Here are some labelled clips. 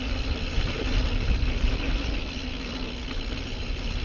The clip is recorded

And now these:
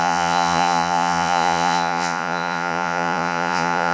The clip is remade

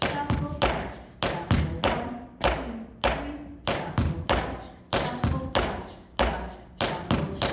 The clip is recorded